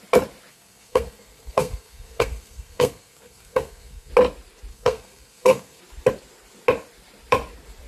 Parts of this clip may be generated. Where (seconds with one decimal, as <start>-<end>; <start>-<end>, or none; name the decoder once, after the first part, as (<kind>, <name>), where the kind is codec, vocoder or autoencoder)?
0.5-4.1 (codec, SNAC); 4.7-5.8